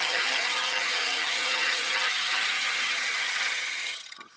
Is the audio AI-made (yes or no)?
yes